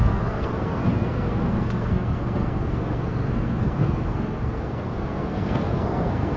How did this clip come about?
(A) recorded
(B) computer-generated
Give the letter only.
B